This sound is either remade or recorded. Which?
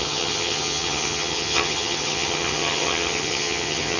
remade